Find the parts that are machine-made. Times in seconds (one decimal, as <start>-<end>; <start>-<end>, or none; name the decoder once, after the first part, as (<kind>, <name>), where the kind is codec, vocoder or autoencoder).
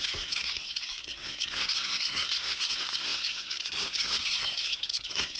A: 0.0-5.4 (codec, SNAC)